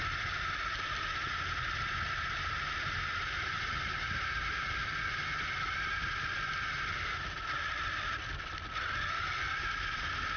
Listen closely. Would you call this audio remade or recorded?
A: recorded